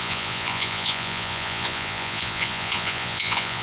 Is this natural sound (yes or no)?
no